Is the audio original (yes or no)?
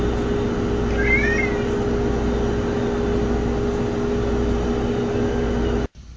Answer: yes